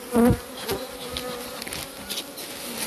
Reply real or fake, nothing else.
real